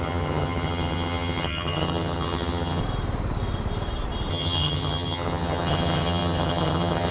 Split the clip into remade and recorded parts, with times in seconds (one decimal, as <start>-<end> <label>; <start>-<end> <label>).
0.0-2.8 remade; 2.8-4.3 recorded; 4.3-7.1 remade